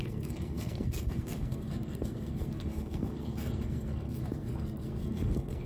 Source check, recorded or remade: remade